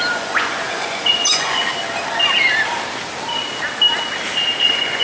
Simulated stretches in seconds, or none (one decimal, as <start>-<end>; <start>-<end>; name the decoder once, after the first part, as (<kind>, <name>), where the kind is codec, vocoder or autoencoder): 0.0-1.6 (vocoder, Vocos); 4.6-5.0